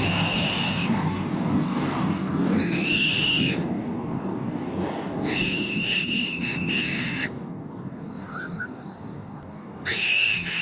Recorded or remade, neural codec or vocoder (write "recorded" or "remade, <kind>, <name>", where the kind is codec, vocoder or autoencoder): remade, codec, DAC